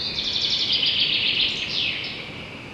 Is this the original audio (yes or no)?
yes